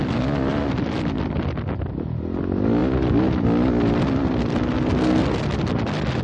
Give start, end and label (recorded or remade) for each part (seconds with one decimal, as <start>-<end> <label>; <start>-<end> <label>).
0.0-6.2 recorded